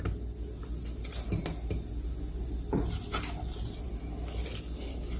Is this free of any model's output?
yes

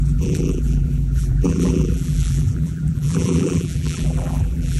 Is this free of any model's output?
no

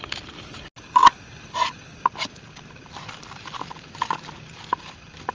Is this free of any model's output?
yes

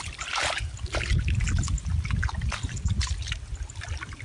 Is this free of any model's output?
yes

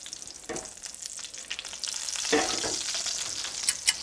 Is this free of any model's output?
yes